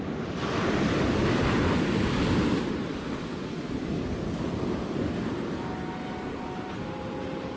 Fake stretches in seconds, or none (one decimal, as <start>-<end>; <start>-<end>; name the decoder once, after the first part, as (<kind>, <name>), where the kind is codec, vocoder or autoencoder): none